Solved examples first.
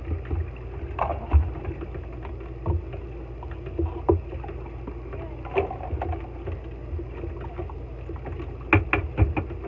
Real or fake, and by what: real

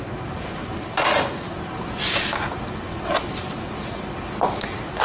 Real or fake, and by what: real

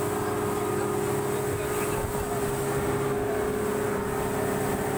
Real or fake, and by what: real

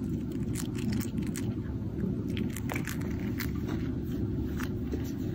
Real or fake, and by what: real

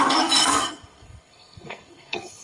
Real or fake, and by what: fake, codec, SNAC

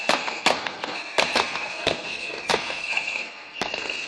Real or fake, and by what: fake, codec, SNAC